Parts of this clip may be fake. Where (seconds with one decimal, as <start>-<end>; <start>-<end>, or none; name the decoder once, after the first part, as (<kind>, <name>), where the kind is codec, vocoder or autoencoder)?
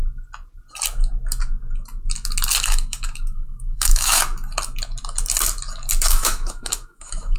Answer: 2.6-4.2 (autoencoder, DAC-VAE); 6.1-7.4